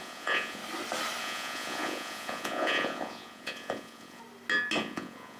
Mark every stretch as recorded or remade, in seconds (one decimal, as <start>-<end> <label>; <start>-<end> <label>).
0.0-0.6 remade; 0.6-1.2 recorded; 1.2-4.2 remade; 4.2-4.8 recorded; 4.8-5.4 remade